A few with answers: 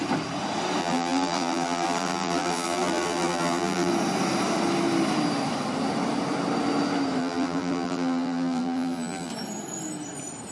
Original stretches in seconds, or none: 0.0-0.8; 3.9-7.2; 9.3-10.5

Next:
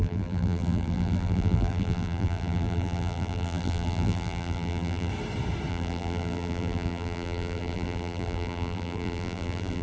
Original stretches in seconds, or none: 5.1-5.7

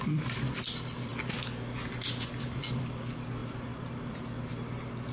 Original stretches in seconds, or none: 0.0-3.4; 4.5-5.1

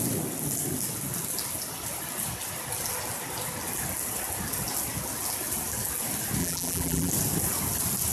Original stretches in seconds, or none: 0.0-6.4; 7.1-8.1

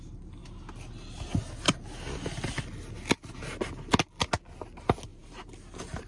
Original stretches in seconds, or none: 0.0-5.1

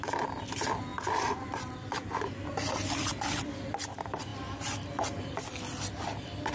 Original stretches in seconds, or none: 0.0-6.5